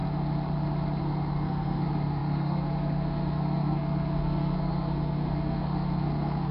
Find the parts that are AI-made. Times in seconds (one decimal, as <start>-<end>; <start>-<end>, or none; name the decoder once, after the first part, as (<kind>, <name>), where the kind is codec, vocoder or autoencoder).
1.0-6.5 (codec, SNAC)